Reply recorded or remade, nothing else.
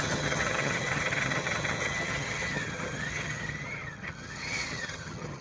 remade